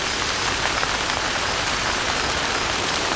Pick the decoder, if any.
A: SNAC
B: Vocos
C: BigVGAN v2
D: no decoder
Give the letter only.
D